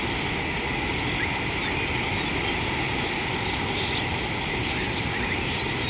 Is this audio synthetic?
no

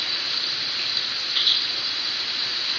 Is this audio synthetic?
no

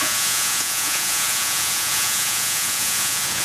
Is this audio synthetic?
yes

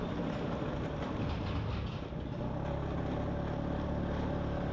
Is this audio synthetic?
no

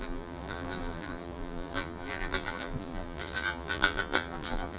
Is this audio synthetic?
yes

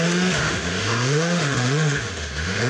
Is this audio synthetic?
yes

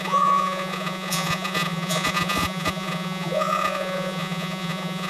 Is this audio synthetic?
yes